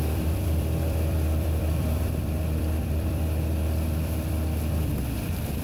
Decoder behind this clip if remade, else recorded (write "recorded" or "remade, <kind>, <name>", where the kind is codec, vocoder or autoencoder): remade, vocoder, BigVGAN v2